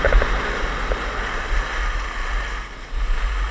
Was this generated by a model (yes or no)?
no